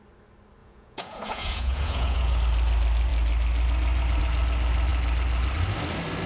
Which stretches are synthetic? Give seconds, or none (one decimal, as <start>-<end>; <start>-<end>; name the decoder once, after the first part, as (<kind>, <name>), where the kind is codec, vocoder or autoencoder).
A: 0.6-2.4 (vocoder, Vocos)